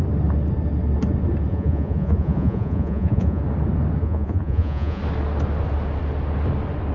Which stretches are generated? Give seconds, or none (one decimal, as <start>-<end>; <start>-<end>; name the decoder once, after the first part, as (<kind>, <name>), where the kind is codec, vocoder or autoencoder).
1.5-3.4 (vocoder, Vocos); 4.0-5.0